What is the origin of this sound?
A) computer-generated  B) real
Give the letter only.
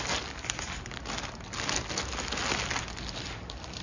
B